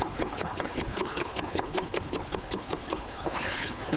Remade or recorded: remade